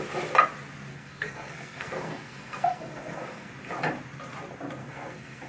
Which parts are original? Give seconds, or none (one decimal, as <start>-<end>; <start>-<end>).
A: 0.0-0.9; 3.5-4.8